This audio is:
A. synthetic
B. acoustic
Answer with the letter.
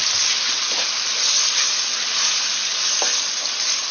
B